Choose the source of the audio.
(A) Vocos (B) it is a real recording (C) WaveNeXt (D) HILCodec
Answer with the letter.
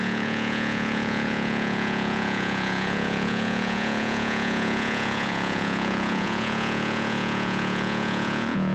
A